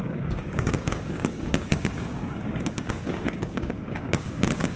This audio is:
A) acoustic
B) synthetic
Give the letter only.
B